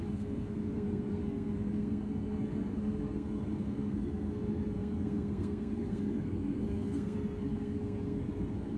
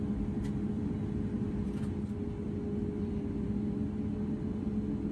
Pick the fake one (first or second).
first